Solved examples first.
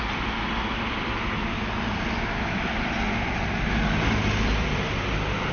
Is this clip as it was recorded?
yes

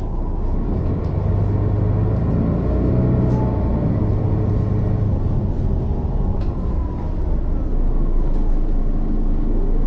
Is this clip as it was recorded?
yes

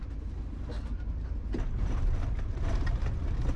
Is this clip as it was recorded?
yes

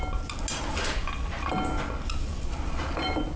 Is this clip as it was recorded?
yes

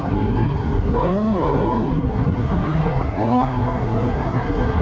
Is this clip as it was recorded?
no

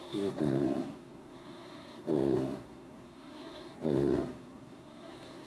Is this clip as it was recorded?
no